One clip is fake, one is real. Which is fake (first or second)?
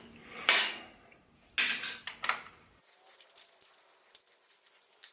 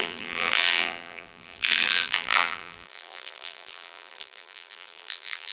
second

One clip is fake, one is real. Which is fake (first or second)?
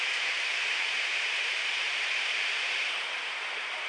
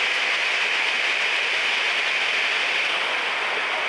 first